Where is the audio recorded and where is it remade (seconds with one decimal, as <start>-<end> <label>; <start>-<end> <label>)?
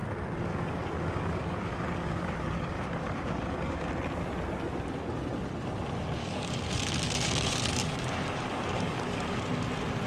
0.0-3.9 remade; 3.9-6.2 recorded; 6.2-9.4 remade; 9.4-10.1 recorded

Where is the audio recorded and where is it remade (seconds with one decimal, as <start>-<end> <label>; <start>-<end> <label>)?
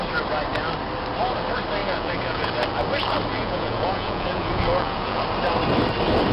0.0-1.8 recorded; 1.8-2.5 remade; 2.5-3.3 recorded; 3.3-5.2 remade; 5.2-6.3 recorded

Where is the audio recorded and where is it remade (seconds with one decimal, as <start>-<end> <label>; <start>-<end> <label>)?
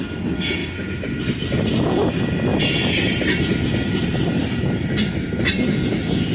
0.0-6.3 recorded